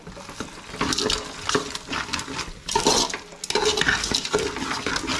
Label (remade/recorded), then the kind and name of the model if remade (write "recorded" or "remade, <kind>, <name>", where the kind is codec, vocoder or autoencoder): recorded